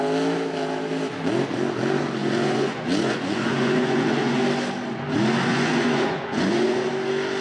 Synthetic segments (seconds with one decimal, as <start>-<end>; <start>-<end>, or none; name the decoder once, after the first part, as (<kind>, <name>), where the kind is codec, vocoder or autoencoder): 2.2-4.4 (vocoder, Vocos); 5.5-6.9